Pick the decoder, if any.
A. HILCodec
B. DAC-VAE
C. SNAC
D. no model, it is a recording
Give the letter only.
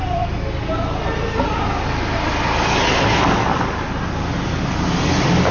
D